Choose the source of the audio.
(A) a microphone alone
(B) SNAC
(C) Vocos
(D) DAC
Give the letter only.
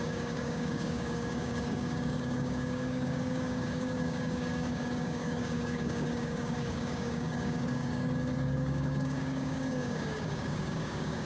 D